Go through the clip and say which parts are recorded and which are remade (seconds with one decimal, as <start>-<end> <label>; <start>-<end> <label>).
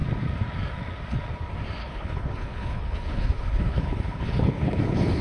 0.0-1.8 recorded; 1.8-5.2 remade